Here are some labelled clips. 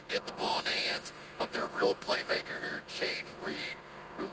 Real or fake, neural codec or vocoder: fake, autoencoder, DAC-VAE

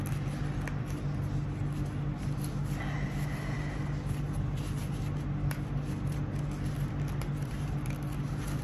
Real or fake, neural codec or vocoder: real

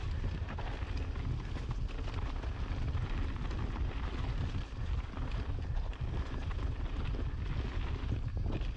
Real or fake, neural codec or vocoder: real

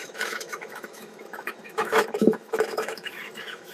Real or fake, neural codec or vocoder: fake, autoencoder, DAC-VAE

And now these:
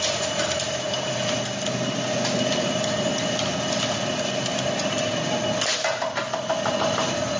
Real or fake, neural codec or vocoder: real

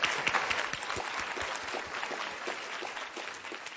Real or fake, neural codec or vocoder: real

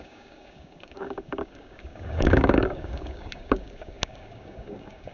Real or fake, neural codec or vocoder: fake, codec, DAC